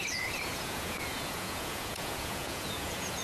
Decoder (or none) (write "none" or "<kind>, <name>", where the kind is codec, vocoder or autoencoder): vocoder, Vocos